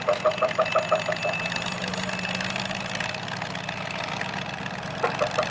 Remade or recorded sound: recorded